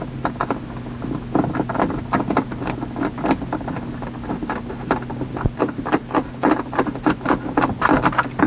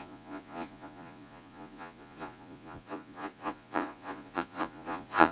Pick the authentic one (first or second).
first